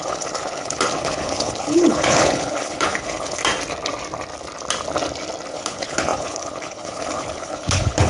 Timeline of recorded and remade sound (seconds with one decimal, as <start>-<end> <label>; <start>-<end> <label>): 0.0-3.4 remade; 3.4-5.5 recorded; 5.5-8.1 remade